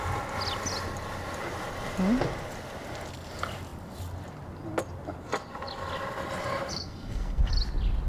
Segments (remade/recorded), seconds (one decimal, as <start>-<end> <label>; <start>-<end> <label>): 0.0-6.7 recorded; 6.7-7.5 remade; 7.5-8.1 recorded